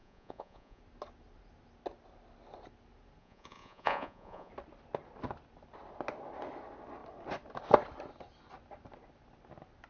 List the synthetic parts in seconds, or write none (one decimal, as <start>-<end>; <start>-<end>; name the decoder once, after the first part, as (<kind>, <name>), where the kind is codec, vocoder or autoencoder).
0.0-0.8 (vocoder, Vocos); 3.2-4.5